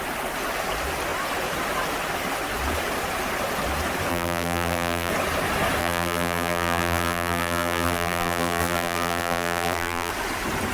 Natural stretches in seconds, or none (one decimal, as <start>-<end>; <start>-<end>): 0.0-4.1; 5.1-5.8; 10.1-10.7